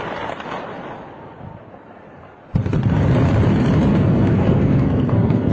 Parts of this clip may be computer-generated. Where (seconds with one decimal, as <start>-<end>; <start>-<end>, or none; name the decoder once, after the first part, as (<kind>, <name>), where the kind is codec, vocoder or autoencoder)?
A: 3.9-5.5 (codec, SNAC)